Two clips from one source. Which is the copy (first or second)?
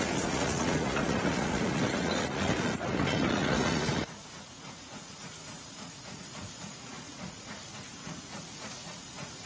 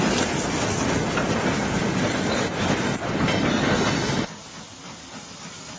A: first